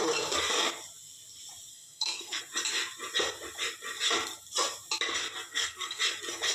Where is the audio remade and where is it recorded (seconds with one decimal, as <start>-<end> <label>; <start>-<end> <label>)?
0.0-1.7 recorded; 1.7-2.4 remade; 2.4-5.5 recorded; 5.5-6.0 remade; 6.0-6.5 recorded

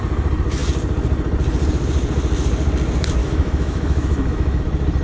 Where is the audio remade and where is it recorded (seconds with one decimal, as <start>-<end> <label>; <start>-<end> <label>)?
0.0-3.2 recorded; 3.2-4.6 remade; 4.6-5.0 recorded